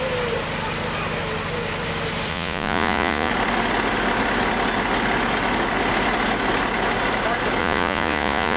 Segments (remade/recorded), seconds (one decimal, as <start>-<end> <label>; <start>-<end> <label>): 0.0-2.3 recorded; 2.3-3.3 remade; 3.3-7.6 recorded; 7.6-8.6 remade